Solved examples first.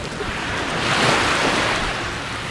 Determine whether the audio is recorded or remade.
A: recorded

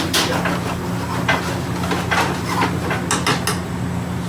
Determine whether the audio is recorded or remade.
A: recorded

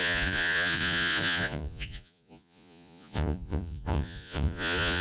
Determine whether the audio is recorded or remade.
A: remade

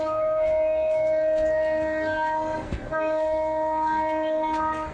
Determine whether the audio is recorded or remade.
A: remade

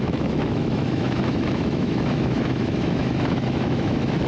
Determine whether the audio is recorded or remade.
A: remade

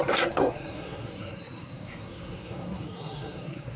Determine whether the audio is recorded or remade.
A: remade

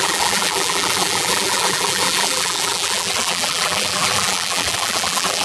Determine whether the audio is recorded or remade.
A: remade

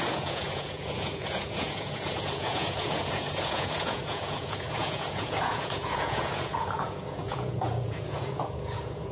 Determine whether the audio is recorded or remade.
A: remade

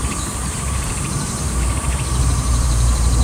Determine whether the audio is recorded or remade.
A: remade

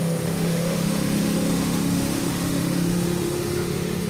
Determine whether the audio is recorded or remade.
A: remade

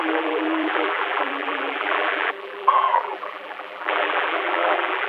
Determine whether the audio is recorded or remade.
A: remade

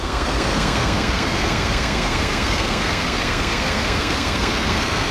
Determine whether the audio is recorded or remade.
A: remade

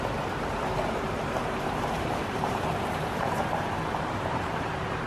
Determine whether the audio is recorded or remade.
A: remade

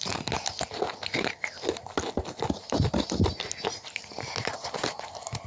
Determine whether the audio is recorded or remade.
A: recorded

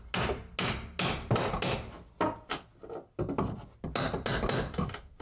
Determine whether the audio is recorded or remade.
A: recorded